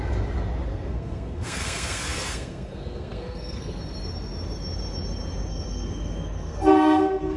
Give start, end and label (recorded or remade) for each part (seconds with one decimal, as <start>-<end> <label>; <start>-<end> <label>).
0.0-0.7 recorded; 0.7-3.8 remade; 3.8-5.5 recorded; 5.5-7.4 remade